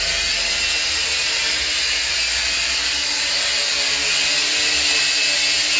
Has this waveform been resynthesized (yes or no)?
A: no